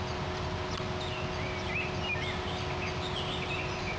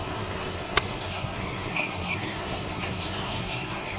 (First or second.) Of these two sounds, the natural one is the first